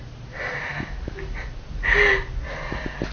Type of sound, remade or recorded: recorded